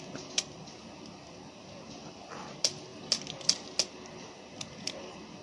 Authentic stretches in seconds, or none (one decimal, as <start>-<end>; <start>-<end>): 0.0-5.4